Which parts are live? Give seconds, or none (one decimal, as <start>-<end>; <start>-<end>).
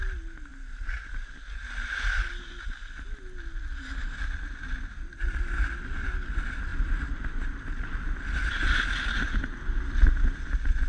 0.0-4.9; 5.5-10.9